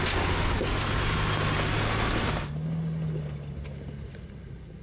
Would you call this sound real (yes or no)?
yes